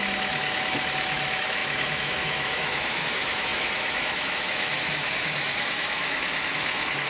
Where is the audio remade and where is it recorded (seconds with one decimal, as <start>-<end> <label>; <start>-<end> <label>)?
0.0-7.1 remade